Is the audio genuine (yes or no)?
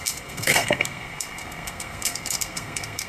no